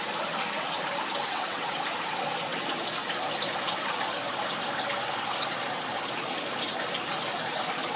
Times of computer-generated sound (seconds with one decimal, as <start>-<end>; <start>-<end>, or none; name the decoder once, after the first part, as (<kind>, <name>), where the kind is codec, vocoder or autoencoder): 1.2-1.8 (vocoder, WaveNeXt)